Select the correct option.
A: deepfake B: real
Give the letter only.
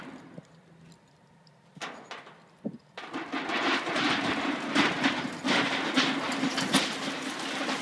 B